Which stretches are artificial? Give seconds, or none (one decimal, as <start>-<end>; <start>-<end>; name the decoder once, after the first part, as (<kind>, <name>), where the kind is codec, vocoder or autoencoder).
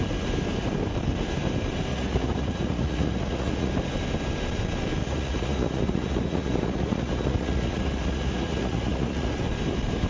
1.9-3.7 (vocoder, Vocos); 5.0-9.5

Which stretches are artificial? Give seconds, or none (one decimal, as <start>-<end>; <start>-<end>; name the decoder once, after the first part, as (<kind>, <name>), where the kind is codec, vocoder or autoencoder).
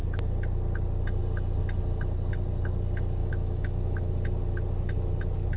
3.2-4.1 (autoencoder, DAC-VAE)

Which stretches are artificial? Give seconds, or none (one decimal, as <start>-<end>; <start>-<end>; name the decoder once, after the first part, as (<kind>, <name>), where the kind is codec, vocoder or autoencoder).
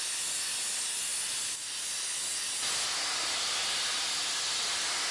none